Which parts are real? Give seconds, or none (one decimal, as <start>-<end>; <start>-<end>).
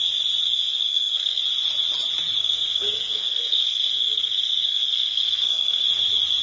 0.0-0.7; 1.4-2.4; 5.8-6.4